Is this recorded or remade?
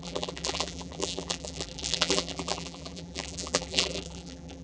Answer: remade